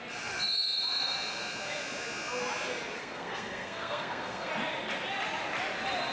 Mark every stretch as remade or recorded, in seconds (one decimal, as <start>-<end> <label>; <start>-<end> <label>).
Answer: 0.0-3.0 recorded; 3.0-4.5 remade; 4.5-6.1 recorded